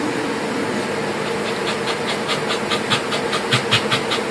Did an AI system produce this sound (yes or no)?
no